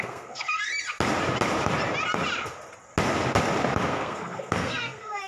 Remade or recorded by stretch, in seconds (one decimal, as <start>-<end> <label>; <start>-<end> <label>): 0.0-0.7 remade; 0.7-3.9 recorded; 3.9-5.3 remade